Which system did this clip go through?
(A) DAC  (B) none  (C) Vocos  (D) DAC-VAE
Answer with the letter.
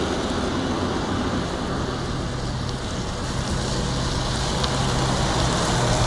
B